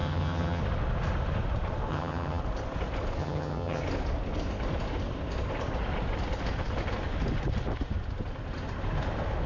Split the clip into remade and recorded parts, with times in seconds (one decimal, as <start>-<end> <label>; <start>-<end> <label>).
0.0-0.6 remade; 0.6-1.9 recorded; 1.9-2.4 remade; 2.4-3.2 recorded; 3.2-3.8 remade; 3.8-9.5 recorded

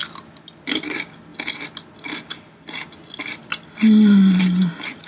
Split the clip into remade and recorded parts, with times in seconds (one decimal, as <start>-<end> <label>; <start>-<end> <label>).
0.0-5.1 recorded

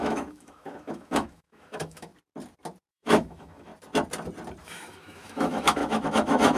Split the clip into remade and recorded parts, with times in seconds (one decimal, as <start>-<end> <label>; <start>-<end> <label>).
0.0-2.1 remade; 2.1-2.9 recorded; 2.9-3.7 remade; 3.7-4.6 recorded; 4.6-6.6 remade

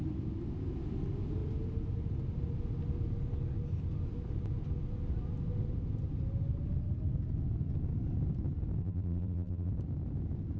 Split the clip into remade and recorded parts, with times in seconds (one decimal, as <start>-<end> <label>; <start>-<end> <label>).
0.0-8.8 recorded; 8.8-9.7 remade; 9.7-10.6 recorded

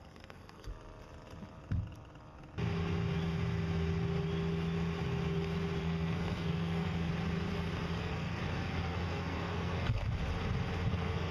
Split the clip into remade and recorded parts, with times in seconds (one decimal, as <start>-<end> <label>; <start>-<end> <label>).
0.0-0.7 remade; 0.7-5.8 recorded; 5.8-7.1 remade; 7.1-8.0 recorded; 8.0-10.0 remade; 10.0-10.9 recorded; 10.9-11.3 remade

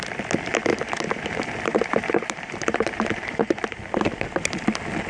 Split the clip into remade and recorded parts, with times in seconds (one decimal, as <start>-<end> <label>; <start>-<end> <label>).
0.0-0.7 recorded; 0.7-3.8 remade; 3.8-5.1 recorded

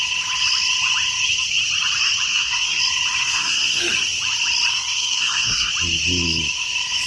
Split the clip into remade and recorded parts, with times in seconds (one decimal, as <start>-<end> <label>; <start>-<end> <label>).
0.0-2.3 recorded; 2.3-2.8 remade; 2.8-3.2 recorded; 3.2-3.8 remade; 3.8-4.7 recorded; 4.7-5.7 remade; 5.7-7.1 recorded